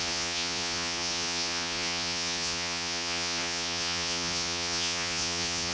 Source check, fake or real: fake